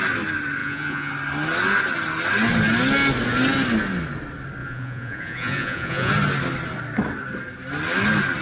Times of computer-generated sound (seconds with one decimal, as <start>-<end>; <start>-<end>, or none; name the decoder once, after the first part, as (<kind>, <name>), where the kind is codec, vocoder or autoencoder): 0.6-1.1 (vocoder, Vocos); 4.6-6.1